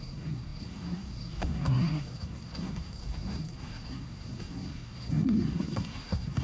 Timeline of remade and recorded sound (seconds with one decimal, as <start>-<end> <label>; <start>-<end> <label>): 0.0-6.4 remade